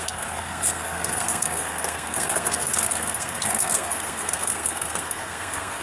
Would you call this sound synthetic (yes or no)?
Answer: yes